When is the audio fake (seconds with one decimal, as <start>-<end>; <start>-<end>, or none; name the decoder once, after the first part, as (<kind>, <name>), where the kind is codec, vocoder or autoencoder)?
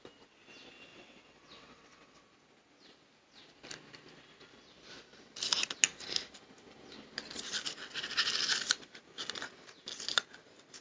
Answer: 0.9-2.2 (vocoder, WaveNeXt)